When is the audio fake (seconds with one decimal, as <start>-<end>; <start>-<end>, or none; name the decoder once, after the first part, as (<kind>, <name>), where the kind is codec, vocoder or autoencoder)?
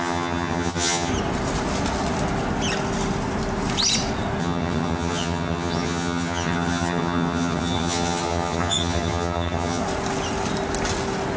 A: 0.0-1.1 (vocoder, HiFi-GAN); 4.4-9.8